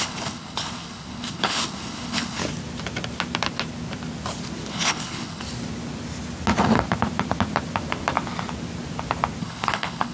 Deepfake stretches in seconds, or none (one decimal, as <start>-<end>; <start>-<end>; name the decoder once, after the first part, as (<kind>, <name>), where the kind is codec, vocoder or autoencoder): 0.0-2.4 (codec, HILCodec); 4.7-5.4; 9.4-10.1